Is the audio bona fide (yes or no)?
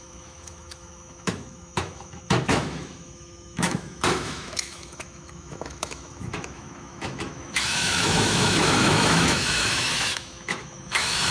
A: no